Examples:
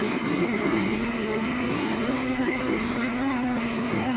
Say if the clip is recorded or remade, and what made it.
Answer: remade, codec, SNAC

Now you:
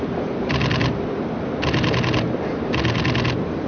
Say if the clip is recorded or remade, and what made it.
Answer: recorded